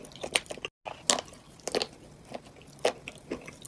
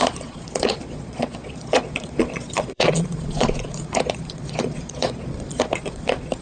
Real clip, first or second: first